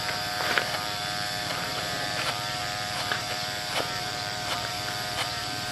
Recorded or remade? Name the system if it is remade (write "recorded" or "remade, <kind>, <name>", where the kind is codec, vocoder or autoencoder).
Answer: remade, vocoder, BigVGAN v2